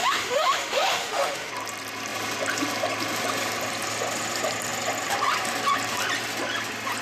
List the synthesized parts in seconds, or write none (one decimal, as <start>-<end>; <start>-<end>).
0.0-1.5